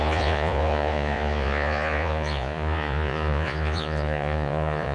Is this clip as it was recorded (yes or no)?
no